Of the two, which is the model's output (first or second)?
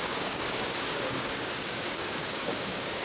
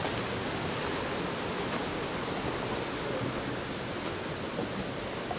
first